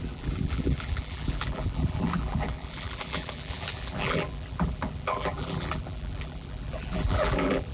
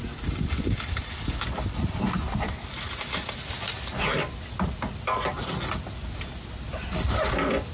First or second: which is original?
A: second